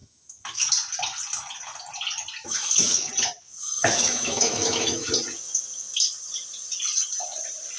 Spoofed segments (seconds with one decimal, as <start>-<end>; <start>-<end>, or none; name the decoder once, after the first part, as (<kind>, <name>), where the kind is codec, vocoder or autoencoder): 0.0-0.7 (autoencoder, DAC-VAE); 2.4-3.1; 3.6-5.1